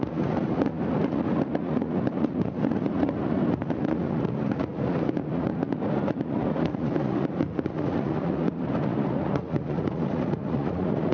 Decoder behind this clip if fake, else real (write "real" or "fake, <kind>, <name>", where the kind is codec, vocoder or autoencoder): fake, vocoder, Vocos